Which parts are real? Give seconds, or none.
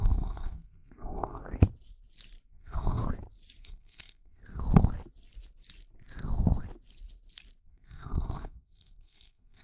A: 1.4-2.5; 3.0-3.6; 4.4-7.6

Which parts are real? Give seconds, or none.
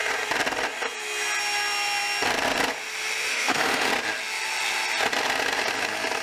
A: 0.0-3.3; 3.9-6.2